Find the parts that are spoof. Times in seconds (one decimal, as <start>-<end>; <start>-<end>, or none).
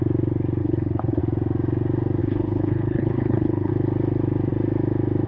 0.6-1.2; 2.2-3.7